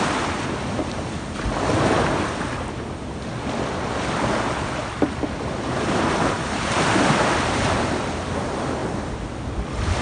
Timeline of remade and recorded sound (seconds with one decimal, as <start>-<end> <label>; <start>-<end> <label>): 0.0-8.8 remade; 8.8-10.0 recorded